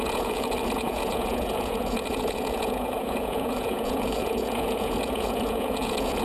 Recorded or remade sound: remade